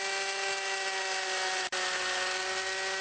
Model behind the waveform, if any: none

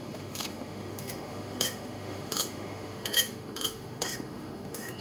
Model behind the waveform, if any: autoencoder, DAC-VAE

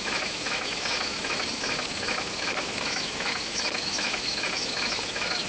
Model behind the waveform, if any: autoencoder, DAC-VAE